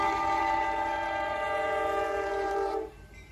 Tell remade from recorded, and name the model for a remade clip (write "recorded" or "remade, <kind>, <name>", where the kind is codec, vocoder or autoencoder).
remade, vocoder, BigVGAN v2